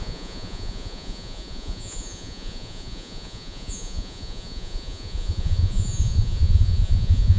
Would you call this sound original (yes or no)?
no